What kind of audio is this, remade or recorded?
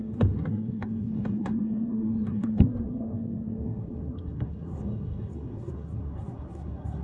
remade